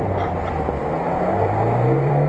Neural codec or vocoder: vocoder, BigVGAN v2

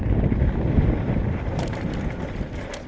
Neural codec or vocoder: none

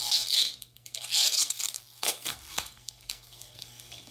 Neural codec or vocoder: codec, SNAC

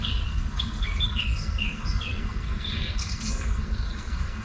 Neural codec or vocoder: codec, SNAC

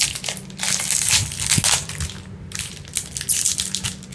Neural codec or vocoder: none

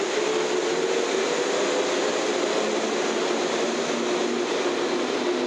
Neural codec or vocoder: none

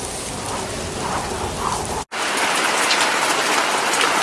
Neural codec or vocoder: none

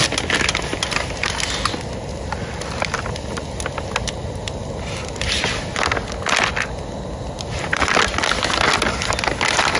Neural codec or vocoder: none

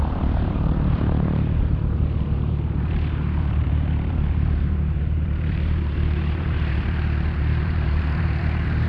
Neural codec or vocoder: vocoder, BigVGAN v2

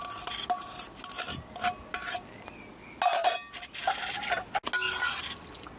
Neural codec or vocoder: none